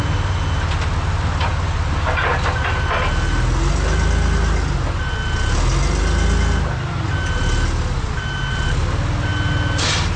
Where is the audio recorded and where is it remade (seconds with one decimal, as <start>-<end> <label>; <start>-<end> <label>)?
0.0-10.2 recorded

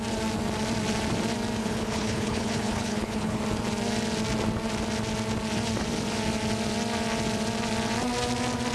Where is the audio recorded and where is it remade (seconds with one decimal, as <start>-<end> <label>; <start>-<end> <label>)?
0.0-1.6 recorded; 1.6-3.4 remade; 3.4-8.7 recorded